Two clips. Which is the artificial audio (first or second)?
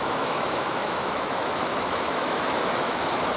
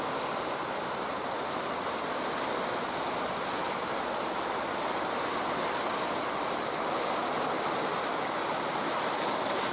first